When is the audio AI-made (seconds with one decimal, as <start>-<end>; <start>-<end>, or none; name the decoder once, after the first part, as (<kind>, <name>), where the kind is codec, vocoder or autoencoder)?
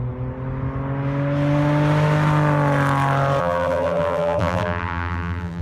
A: 3.4-5.6 (vocoder, BigVGAN v2)